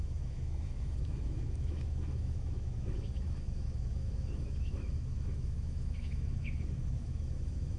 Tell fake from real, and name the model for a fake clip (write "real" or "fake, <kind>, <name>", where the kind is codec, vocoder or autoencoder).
fake, autoencoder, DAC-VAE